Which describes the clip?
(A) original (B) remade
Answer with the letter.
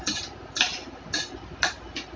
A